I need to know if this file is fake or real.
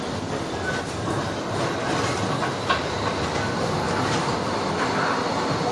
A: real